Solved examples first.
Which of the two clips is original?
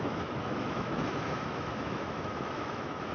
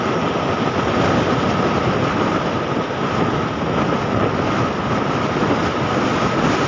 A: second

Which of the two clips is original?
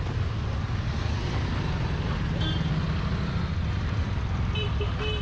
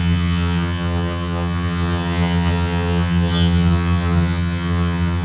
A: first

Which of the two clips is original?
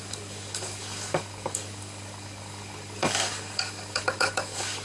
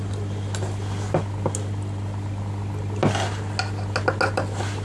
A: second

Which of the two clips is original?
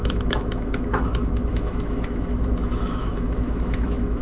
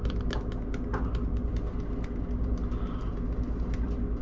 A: second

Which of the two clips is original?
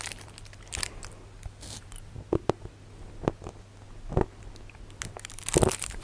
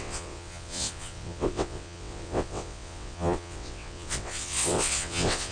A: first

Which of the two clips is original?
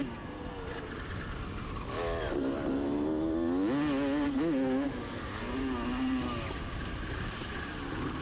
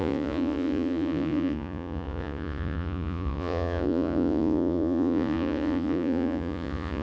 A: first